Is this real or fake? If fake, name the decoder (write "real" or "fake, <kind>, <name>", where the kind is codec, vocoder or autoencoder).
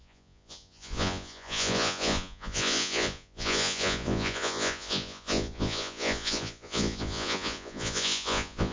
fake, vocoder, Vocos